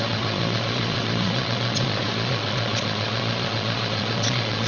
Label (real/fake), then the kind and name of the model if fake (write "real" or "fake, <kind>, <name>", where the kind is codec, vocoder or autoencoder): fake, vocoder, Vocos